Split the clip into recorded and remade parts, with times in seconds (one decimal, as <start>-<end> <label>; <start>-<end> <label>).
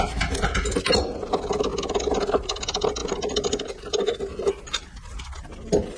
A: 0.0-6.0 recorded